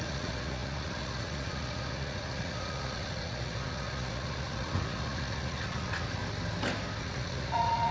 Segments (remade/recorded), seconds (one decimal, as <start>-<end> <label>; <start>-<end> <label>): 0.0-6.2 remade; 6.2-7.0 recorded; 7.0-7.9 remade